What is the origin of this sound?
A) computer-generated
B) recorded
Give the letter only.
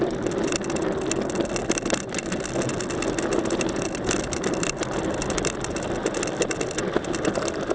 B